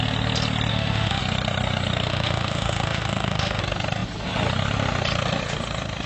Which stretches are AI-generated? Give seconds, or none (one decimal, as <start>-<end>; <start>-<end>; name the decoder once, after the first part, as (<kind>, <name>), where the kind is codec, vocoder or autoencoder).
0.7-1.2 (autoencoder, DAC-VAE); 2.1-3.6